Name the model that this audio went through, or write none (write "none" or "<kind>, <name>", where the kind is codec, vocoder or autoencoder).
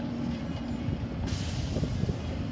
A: none